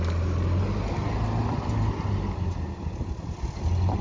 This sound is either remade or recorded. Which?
recorded